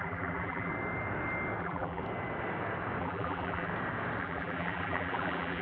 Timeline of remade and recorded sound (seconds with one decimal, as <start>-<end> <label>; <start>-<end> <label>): 0.0-0.7 remade; 0.7-1.6 recorded; 1.6-2.0 remade; 2.0-3.0 recorded; 3.0-3.7 remade; 3.7-4.2 recorded; 4.2-5.6 remade